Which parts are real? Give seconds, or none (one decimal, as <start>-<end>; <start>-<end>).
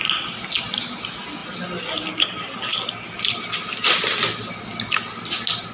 0.0-5.7